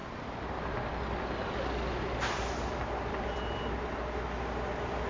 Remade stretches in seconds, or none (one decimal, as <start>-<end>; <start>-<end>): none